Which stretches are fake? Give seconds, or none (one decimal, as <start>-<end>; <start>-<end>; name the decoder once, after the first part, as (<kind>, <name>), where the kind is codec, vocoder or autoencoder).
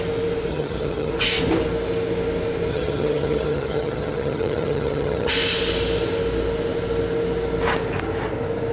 0.5-1.1 (vocoder, HiFi-GAN); 2.7-5.3